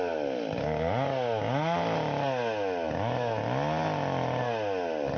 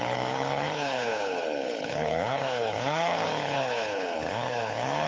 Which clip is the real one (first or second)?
first